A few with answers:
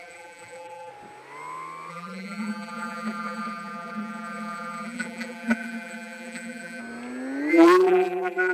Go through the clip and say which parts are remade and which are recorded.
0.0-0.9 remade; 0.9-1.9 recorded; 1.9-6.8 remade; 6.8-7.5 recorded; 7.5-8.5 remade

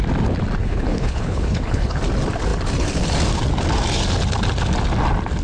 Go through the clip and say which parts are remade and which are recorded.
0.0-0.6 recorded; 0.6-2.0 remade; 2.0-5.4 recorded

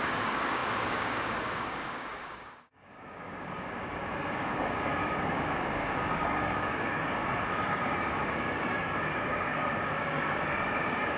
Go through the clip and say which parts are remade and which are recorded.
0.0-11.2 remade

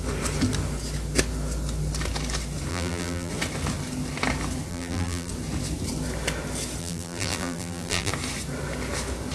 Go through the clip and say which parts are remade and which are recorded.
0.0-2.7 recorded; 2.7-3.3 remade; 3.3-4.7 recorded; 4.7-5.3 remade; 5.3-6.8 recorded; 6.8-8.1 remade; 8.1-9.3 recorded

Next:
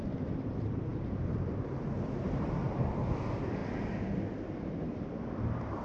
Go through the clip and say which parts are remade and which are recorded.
0.0-3.6 remade; 3.6-4.6 recorded; 4.6-5.8 remade

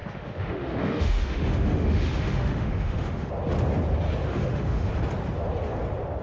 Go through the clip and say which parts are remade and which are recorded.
0.0-3.3 remade; 3.3-4.3 recorded; 4.3-4.9 remade; 4.9-6.2 recorded

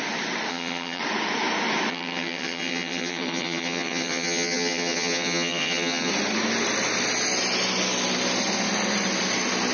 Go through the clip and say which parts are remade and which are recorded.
0.0-0.5 recorded; 0.5-1.0 remade; 1.0-1.9 recorded; 1.9-6.1 remade; 6.1-9.7 recorded